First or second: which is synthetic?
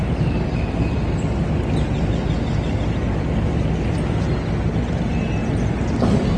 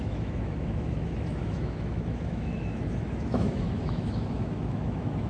second